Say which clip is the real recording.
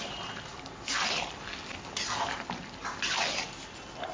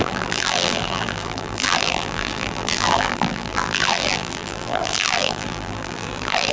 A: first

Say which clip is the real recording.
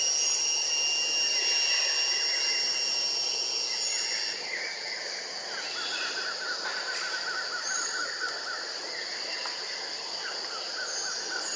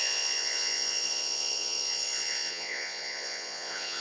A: first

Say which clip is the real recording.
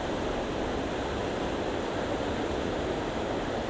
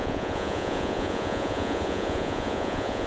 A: first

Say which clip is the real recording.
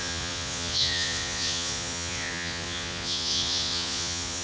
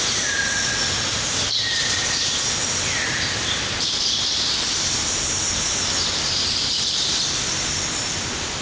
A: second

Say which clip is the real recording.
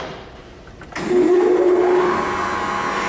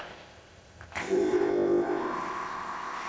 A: first